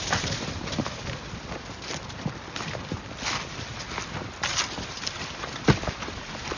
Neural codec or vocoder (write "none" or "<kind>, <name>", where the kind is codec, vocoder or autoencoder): none